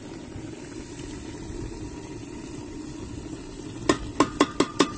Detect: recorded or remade recorded